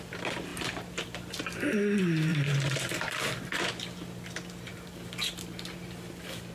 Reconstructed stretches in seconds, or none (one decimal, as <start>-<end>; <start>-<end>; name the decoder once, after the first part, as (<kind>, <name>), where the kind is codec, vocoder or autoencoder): 2.3-3.7 (vocoder, BigVGAN v2)